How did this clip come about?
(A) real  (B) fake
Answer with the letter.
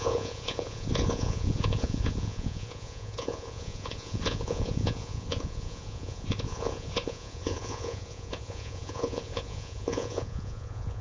B